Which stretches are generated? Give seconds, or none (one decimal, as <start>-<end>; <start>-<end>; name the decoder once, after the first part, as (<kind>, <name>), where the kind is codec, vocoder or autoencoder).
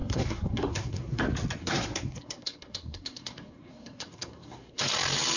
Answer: 0.0-1.2 (codec, SNAC); 1.6-4.8